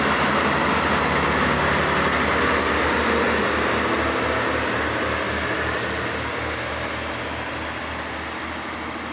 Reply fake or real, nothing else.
real